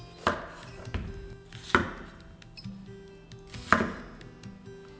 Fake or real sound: real